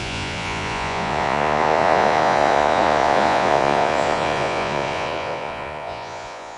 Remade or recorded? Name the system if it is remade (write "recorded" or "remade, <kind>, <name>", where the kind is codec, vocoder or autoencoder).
remade, vocoder, Vocos